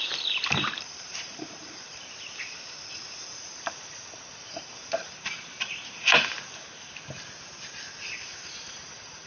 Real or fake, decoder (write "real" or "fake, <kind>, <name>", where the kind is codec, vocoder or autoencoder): fake, vocoder, BigVGAN v2